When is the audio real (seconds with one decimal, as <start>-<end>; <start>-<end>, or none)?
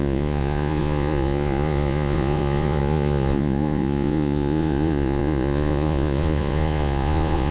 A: none